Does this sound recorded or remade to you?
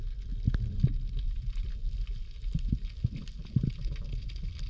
recorded